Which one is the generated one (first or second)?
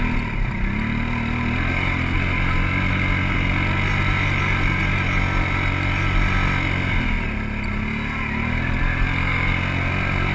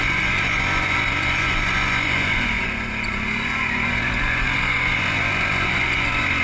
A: second